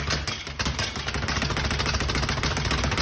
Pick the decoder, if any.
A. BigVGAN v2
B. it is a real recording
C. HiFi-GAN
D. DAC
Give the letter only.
B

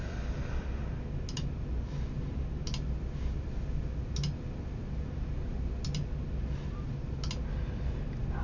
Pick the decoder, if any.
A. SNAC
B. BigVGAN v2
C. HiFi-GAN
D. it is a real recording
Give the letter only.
D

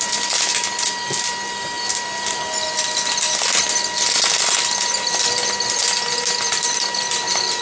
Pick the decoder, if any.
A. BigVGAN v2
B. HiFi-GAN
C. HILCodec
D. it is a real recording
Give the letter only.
D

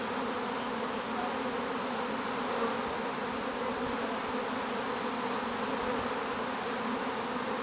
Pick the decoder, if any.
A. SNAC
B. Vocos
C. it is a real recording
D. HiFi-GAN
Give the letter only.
C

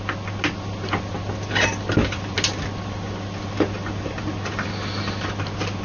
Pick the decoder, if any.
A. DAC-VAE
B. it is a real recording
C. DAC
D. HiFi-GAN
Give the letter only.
B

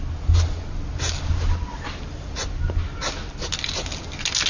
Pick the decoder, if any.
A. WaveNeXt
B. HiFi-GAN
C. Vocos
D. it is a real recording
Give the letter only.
D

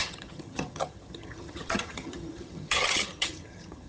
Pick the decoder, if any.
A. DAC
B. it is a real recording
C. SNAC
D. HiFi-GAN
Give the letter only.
D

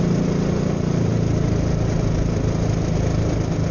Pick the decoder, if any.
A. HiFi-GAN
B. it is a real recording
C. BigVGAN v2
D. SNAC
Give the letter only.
B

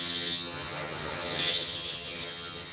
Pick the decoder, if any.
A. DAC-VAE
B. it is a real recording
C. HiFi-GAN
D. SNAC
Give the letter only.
C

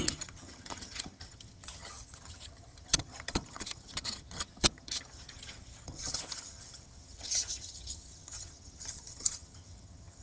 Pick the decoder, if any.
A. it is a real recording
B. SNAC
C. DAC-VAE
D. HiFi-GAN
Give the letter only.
D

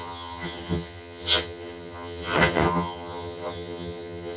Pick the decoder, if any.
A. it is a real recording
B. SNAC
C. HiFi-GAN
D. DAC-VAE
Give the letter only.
C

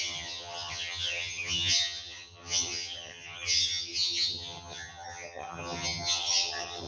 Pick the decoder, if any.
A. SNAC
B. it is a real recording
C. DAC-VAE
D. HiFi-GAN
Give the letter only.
D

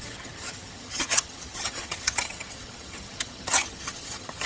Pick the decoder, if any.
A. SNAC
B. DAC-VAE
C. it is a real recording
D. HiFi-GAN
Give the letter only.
D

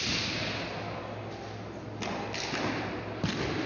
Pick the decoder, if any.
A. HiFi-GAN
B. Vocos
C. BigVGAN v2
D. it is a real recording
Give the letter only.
D